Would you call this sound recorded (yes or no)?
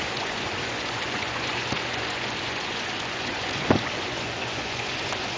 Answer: no